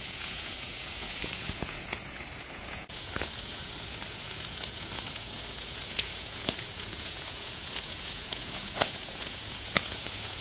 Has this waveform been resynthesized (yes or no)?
yes